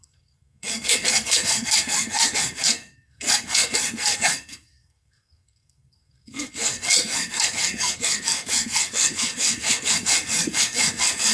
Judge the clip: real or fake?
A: fake